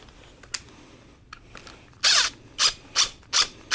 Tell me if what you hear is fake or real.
real